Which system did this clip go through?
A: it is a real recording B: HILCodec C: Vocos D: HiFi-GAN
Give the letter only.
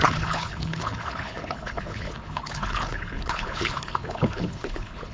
B